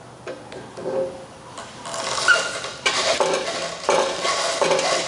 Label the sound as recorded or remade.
recorded